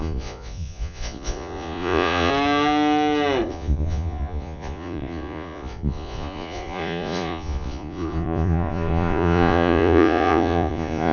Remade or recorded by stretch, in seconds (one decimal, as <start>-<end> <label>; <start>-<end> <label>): 0.0-2.3 remade; 2.3-3.5 recorded; 3.5-11.1 remade